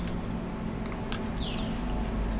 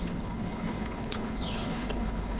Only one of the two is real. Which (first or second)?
first